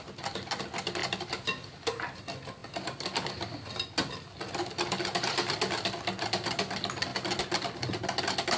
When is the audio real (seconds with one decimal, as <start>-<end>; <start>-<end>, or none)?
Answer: 0.0-1.0; 2.2-8.6